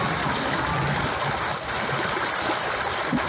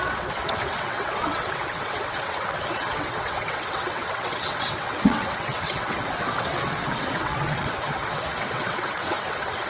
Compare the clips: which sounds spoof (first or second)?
second